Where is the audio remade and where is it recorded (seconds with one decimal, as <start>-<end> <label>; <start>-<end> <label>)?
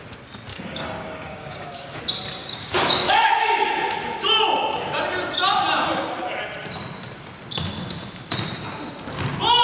0.0-0.5 recorded; 0.5-2.0 remade; 2.0-2.4 recorded; 2.4-3.7 remade; 3.7-9.6 recorded